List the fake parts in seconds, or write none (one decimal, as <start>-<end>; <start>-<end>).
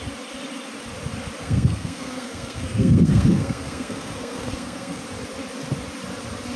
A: 1.4-5.0